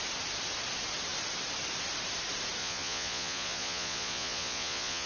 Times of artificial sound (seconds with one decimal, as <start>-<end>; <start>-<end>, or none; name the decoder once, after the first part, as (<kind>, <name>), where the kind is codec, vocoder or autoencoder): 2.6-5.1 (vocoder, Vocos)